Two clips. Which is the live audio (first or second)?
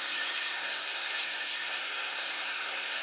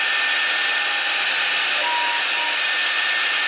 second